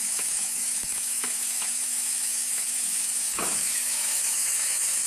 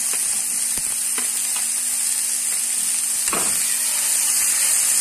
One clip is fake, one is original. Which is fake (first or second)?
first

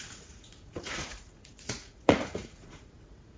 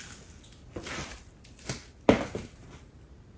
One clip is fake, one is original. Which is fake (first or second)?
first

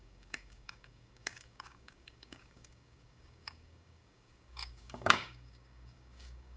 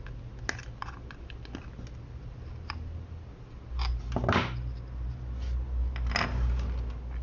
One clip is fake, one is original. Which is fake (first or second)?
first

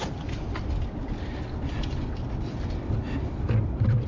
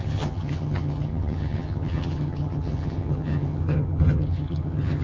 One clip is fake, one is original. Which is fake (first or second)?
second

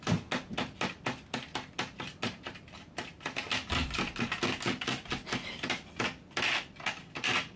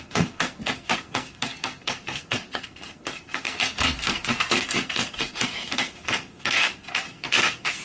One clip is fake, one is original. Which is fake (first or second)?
second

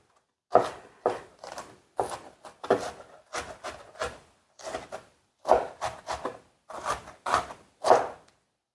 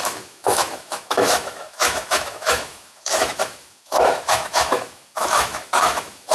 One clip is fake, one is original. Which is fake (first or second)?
second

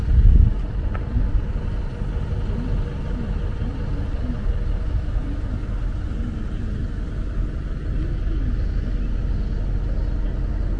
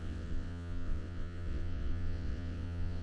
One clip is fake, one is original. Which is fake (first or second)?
second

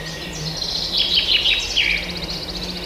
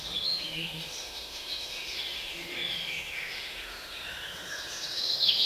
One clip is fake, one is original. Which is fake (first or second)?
second